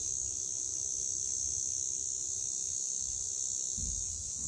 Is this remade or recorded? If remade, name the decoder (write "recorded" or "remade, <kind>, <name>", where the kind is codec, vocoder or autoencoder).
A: recorded